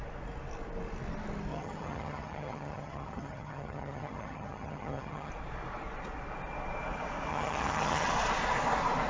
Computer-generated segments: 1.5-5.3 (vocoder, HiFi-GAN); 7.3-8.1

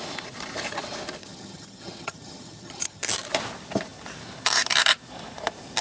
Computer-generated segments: 1.2-3.0 (vocoder, HiFi-GAN)

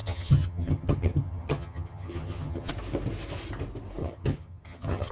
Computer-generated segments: 0.0-2.7 (vocoder, HiFi-GAN); 4.0-5.1

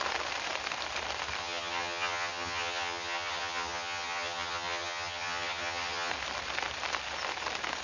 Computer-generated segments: 1.4-6.1 (vocoder, HiFi-GAN)

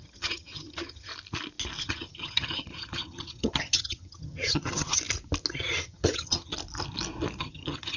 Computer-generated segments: 0.0-1.1 (vocoder, HiFi-GAN); 1.8-5.0; 5.5-6.5; 7.4-8.0

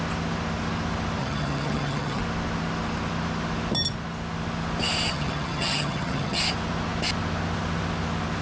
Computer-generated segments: 1.2-2.2 (vocoder, HiFi-GAN); 5.1-6.4

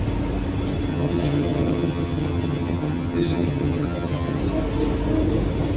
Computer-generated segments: 0.9-4.4 (vocoder, HiFi-GAN)

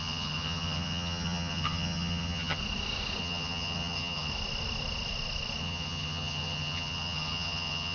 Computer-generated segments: 0.0-2.6 (vocoder, HiFi-GAN); 3.2-4.3; 5.6-7.9